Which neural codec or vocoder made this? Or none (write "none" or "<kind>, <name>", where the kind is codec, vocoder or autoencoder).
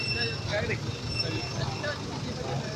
none